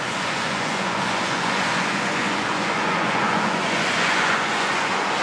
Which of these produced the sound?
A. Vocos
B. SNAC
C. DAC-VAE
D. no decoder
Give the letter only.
A